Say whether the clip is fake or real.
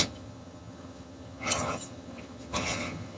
fake